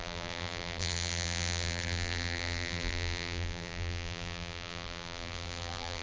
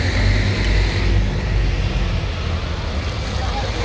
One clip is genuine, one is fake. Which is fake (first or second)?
first